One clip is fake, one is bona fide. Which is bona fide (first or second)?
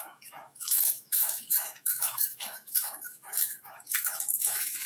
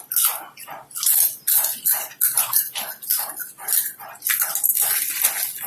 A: second